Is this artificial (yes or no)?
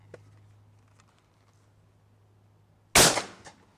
no